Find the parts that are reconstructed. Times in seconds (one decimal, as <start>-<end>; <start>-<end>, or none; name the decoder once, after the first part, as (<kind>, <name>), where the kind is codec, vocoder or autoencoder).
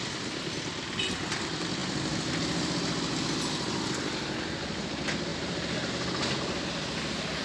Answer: none